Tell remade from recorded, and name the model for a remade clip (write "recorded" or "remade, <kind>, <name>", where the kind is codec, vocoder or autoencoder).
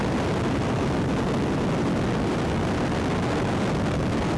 recorded